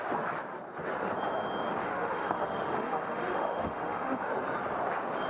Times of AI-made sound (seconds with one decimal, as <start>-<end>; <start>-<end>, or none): 1.8-4.3